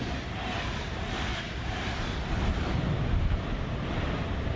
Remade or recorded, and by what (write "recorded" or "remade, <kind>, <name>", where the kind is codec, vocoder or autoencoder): remade, vocoder, BigVGAN v2